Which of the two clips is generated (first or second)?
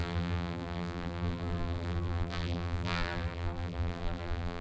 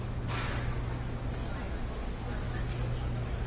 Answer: first